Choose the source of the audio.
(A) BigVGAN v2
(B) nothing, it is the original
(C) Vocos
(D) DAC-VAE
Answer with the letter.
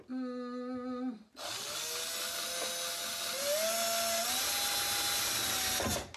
B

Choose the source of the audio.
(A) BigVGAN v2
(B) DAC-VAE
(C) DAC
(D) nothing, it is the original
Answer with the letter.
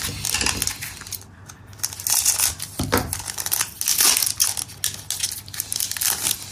D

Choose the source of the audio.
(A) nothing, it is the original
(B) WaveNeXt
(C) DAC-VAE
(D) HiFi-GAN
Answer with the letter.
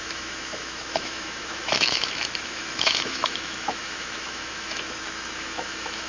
C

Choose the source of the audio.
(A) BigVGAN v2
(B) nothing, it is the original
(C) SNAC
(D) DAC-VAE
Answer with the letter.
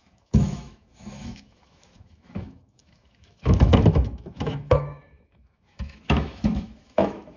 D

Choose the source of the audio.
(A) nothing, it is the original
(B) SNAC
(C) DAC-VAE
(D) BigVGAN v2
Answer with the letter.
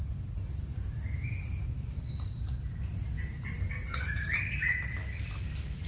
A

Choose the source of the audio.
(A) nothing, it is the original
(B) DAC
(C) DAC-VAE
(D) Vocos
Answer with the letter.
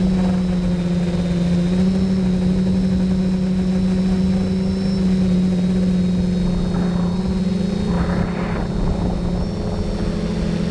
A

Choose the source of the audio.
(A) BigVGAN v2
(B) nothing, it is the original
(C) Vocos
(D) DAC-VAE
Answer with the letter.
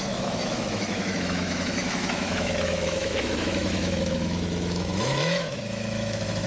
D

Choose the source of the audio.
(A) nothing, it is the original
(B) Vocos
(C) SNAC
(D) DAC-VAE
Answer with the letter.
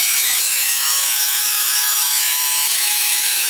D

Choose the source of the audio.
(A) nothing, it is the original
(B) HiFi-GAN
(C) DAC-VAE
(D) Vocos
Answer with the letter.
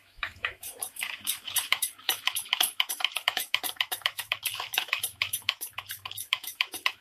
C